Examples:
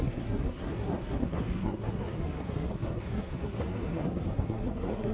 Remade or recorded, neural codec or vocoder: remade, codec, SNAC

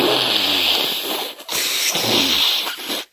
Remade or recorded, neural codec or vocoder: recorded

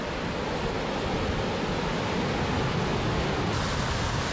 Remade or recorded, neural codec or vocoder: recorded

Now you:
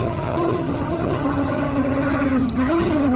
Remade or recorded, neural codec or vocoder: remade, vocoder, HiFi-GAN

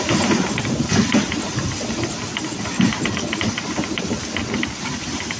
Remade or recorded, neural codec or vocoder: recorded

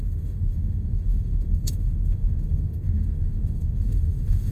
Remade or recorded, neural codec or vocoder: remade, autoencoder, DAC-VAE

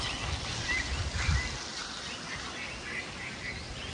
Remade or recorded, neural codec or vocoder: recorded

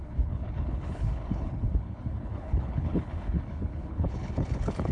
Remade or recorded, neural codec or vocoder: remade, codec, HILCodec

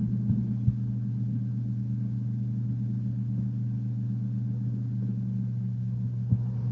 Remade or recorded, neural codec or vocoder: recorded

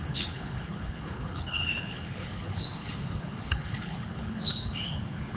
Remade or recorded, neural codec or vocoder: remade, codec, HILCodec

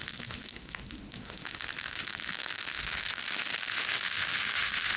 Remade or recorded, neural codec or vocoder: remade, autoencoder, DAC-VAE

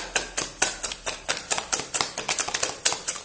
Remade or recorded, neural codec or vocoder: remade, vocoder, BigVGAN v2